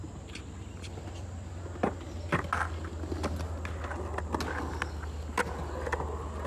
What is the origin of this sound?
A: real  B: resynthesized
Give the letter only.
A